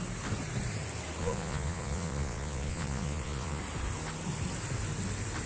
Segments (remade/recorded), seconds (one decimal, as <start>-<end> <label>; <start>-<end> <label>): 0.0-1.2 recorded; 1.2-3.6 remade; 3.6-5.5 recorded